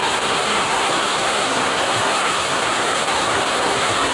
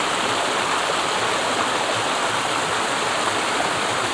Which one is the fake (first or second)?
first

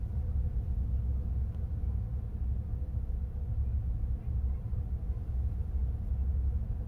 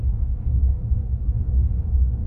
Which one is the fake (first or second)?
second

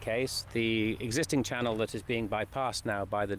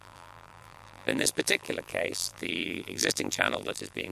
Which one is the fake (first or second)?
second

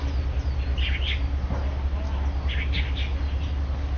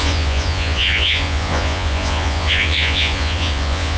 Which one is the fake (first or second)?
second